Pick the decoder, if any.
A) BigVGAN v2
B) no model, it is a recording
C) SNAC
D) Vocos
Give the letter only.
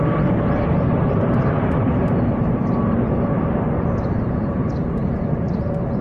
A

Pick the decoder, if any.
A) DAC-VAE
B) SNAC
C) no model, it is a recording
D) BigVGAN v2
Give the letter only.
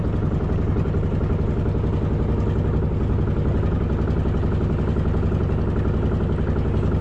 C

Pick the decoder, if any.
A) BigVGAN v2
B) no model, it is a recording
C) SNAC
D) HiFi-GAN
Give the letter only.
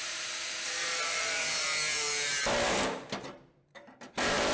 A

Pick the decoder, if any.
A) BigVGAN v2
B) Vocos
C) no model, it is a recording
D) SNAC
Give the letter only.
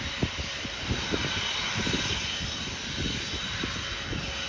C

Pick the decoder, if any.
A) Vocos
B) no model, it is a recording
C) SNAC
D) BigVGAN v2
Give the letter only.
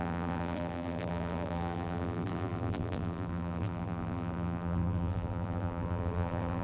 D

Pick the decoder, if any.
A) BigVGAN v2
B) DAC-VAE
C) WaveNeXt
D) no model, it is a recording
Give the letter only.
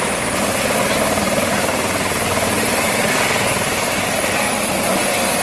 D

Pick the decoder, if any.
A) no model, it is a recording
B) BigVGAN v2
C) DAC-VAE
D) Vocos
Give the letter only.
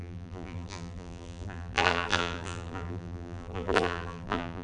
B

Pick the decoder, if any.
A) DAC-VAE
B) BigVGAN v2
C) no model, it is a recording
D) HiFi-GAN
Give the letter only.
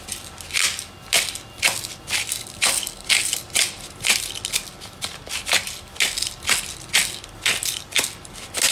C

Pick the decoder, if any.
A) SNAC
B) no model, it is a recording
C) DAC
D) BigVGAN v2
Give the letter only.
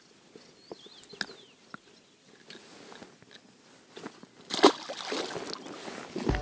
B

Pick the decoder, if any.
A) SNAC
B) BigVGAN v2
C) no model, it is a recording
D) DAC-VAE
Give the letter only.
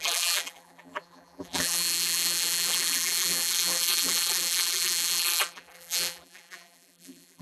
B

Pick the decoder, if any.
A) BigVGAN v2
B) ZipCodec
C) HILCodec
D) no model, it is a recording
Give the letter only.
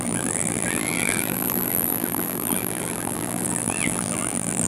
A